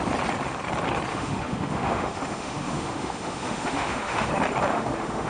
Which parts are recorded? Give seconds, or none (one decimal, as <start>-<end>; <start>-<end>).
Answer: 0.0-1.1; 4.3-4.7